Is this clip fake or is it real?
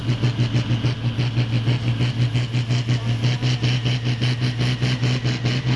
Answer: real